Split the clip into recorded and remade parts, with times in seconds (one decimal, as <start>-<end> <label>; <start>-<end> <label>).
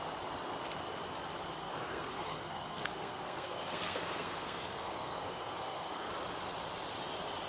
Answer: 0.0-1.6 recorded; 1.6-6.1 remade; 6.1-7.5 recorded